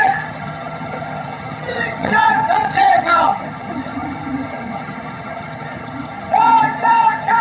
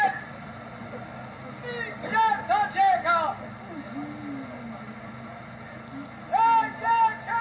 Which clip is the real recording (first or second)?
second